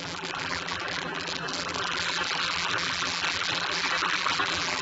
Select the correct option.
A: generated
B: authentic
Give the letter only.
A